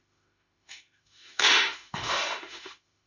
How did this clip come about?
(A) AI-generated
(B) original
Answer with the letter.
A